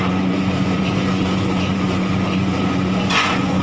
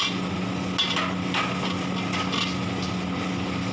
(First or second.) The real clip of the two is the second